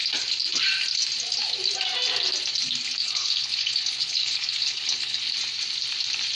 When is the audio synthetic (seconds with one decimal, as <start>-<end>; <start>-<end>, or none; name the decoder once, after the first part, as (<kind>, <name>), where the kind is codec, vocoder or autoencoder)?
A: 3.0-5.2 (codec, HILCodec)